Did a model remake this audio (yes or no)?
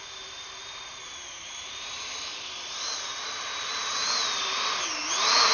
no